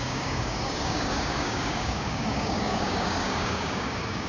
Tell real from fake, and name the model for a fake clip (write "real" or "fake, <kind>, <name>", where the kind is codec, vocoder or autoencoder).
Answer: fake, codec, DAC